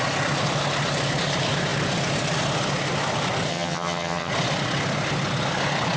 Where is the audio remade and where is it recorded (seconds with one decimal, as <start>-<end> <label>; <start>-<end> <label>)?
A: 0.0-3.5 recorded; 3.5-4.3 remade; 4.3-6.0 recorded